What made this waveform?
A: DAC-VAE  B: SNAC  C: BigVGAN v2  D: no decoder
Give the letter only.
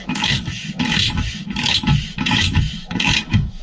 A